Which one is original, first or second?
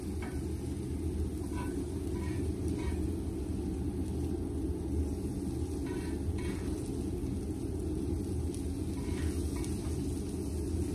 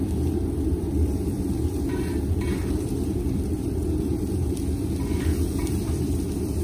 first